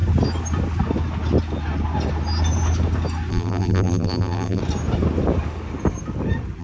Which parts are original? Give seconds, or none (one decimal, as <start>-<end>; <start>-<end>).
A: 0.0-3.3; 4.6-6.6